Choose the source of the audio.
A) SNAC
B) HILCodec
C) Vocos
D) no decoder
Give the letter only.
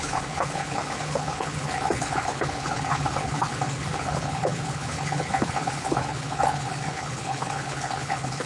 B